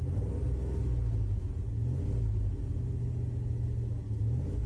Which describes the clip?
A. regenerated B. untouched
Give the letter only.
B